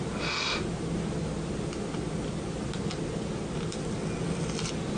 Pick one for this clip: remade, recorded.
recorded